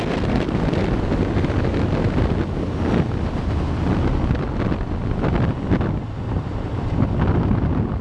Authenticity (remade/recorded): recorded